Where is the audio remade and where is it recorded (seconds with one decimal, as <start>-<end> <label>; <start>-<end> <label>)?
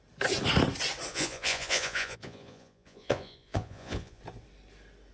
0.0-1.1 recorded; 1.1-4.2 remade; 4.2-5.1 recorded